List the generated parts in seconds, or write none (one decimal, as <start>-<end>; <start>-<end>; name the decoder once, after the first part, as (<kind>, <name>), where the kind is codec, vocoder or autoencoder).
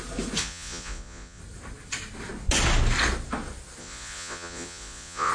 0.4-1.4 (vocoder, Vocos); 3.8-5.3